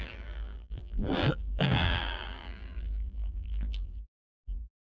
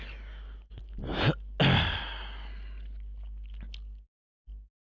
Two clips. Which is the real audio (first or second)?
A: second